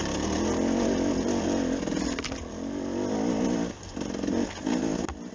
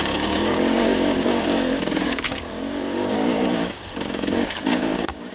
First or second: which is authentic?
first